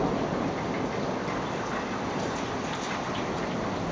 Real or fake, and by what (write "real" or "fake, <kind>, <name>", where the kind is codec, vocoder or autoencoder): real